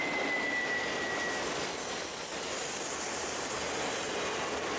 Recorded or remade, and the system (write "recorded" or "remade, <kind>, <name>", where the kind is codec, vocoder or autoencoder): recorded